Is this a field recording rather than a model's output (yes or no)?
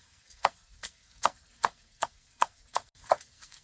no